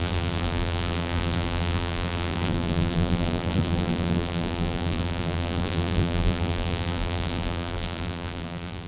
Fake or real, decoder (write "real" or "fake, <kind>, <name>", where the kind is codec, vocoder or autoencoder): fake, vocoder, BigVGAN v2